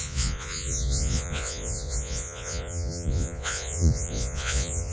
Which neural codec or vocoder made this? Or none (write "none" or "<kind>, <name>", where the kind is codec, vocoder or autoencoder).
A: vocoder, Vocos